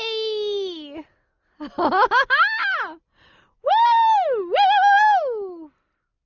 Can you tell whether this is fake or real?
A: real